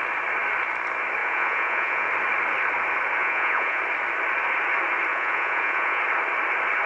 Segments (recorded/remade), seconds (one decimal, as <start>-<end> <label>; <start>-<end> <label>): 0.0-1.2 recorded; 1.2-2.1 remade; 2.1-3.2 recorded; 3.2-3.8 remade; 3.8-5.1 recorded; 5.1-6.0 remade; 6.0-6.9 recorded